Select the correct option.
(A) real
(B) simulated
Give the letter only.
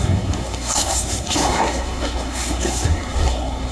B